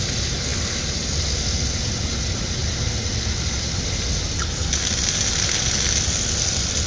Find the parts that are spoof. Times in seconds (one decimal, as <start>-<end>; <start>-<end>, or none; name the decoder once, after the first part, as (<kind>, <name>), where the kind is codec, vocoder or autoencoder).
none